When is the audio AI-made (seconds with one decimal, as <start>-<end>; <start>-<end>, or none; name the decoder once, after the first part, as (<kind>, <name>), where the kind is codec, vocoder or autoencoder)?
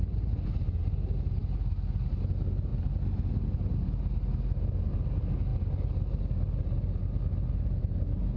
none